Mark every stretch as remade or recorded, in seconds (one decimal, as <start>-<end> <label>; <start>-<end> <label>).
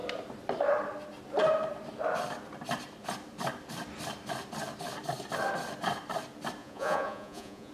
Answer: 0.0-6.6 recorded; 6.6-7.7 remade